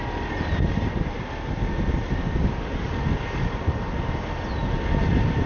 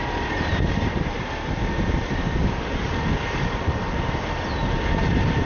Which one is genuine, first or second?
first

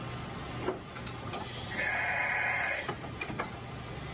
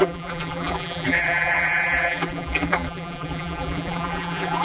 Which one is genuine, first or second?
first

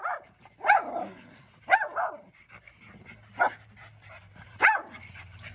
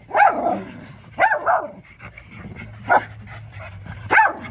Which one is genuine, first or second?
first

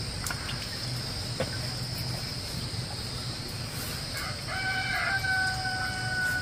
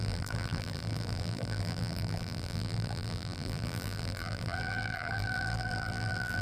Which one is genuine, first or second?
first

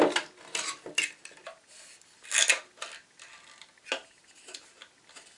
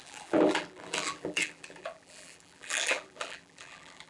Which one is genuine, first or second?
first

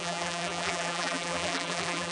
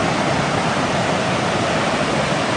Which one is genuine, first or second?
second